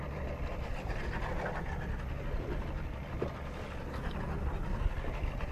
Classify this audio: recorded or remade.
recorded